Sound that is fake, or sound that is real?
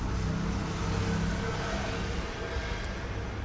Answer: real